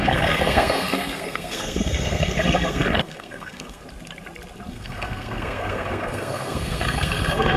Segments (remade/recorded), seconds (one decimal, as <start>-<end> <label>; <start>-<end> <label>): 0.0-3.8 remade; 3.8-4.7 recorded; 4.7-7.6 remade